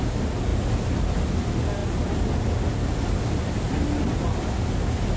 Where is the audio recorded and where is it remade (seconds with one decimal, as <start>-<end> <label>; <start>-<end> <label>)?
0.0-5.2 recorded